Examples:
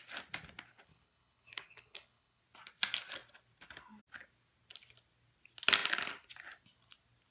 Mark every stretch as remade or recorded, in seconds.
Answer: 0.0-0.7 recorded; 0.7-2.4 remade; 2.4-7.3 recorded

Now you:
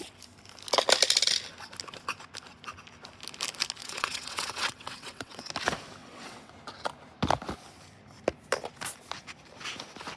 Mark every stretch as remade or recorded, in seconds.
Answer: 0.0-3.8 recorded; 3.8-5.5 remade; 5.5-6.0 recorded; 6.0-6.5 remade; 6.5-10.2 recorded

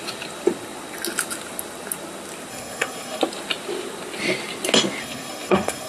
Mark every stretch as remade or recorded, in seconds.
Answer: 0.0-2.5 recorded; 2.5-3.2 remade; 3.2-5.0 recorded; 5.0-5.9 remade